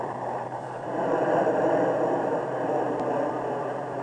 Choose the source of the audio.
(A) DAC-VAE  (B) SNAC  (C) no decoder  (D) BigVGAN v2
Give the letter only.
D